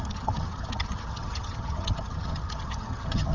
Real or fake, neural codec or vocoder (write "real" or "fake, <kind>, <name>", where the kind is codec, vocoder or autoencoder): fake, vocoder, HiFi-GAN